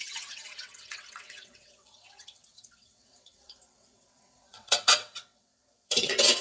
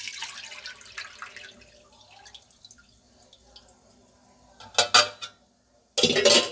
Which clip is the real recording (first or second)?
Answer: second